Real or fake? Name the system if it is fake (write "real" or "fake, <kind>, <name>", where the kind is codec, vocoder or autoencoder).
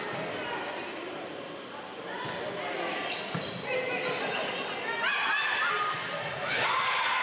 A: real